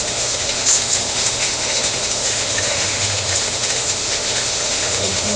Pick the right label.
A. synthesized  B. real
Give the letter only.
A